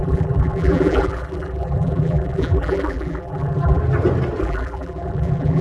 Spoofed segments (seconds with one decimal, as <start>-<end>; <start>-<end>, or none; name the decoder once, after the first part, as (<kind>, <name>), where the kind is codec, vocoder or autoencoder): 0.0-3.8 (vocoder, BigVGAN v2); 4.4-5.6